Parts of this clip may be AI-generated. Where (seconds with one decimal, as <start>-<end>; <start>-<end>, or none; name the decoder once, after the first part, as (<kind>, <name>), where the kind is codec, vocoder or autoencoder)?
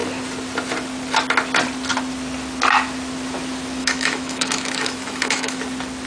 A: 3.8-5.6 (autoencoder, DAC-VAE)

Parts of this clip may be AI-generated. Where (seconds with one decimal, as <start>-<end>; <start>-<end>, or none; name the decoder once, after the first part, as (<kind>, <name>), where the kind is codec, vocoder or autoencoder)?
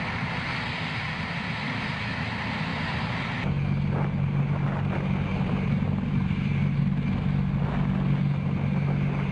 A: none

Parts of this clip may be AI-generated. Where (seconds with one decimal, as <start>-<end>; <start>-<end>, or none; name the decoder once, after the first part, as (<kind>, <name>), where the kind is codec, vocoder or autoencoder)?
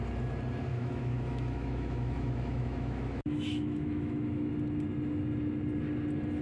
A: 0.7-4.5 (autoencoder, DAC-VAE)